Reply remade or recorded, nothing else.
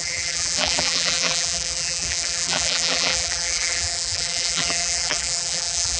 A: remade